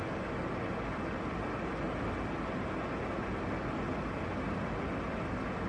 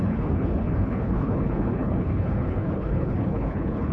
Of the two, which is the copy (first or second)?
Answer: second